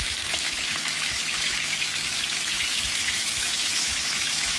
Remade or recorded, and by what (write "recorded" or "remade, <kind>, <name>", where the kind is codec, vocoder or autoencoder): remade, autoencoder, DAC-VAE